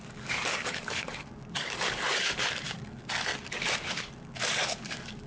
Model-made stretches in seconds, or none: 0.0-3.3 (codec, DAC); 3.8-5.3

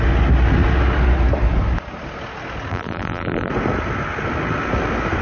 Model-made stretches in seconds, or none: 2.7-3.5 (vocoder, BigVGAN v2)

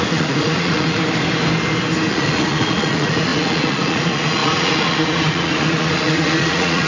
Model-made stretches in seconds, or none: 0.0-1.0 (vocoder, Vocos); 2.1-6.9

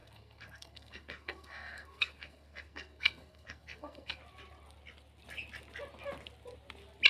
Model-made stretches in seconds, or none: 0.0-4.2 (codec, SNAC)

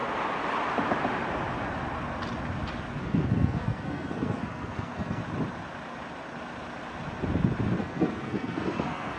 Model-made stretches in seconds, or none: 2.9-5.2 (codec, SNAC); 7.8-9.2

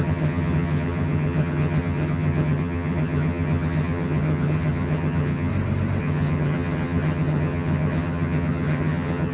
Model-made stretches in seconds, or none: 0.0-5.5 (vocoder, HiFi-GAN); 6.0-9.3